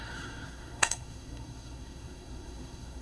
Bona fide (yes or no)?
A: no